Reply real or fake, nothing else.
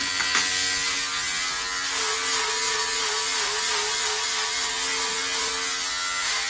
real